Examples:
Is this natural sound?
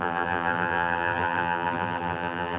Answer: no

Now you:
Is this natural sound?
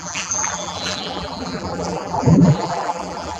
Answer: no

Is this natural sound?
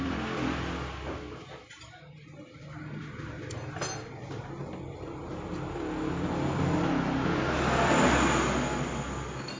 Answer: yes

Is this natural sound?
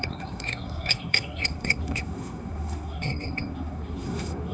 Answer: no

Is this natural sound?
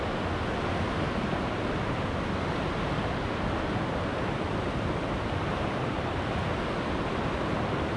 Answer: yes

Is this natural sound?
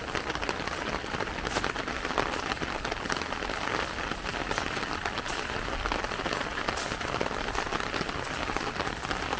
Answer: yes